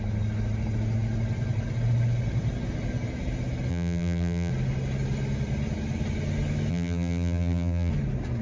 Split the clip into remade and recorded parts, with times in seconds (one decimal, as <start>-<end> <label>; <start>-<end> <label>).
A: 0.0-3.7 recorded; 3.7-4.5 remade; 4.5-6.7 recorded; 6.7-7.9 remade; 7.9-8.4 recorded